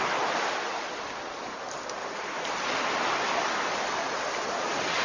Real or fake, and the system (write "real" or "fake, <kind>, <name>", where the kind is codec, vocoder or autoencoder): real